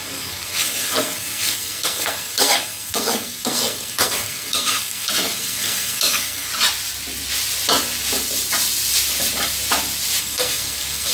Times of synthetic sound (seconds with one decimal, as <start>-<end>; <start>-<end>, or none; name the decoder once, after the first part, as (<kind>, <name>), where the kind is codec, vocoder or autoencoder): 0.0-6.5 (codec, SNAC); 10.2-11.1